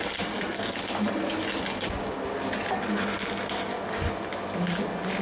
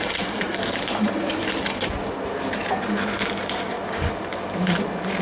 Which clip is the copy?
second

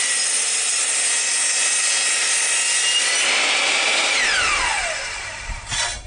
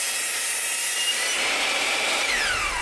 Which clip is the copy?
second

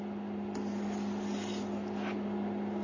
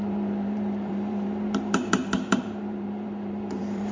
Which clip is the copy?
second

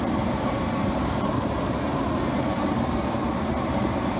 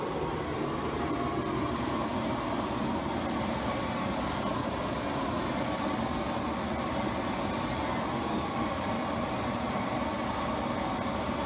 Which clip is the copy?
first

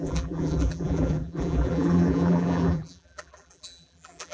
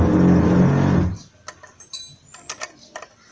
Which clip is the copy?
first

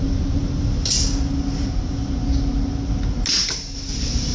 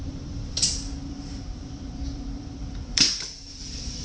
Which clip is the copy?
second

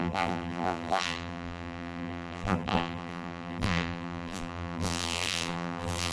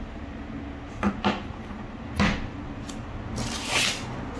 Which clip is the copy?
first